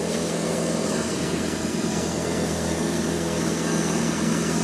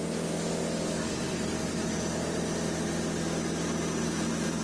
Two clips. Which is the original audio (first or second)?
second